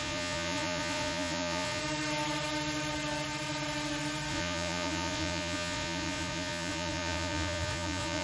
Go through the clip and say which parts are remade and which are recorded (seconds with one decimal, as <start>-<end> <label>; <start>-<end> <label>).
0.0-1.8 remade; 1.8-4.3 recorded; 4.3-8.2 remade